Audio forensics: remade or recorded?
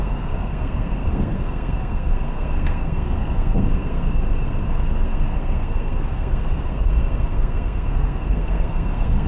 remade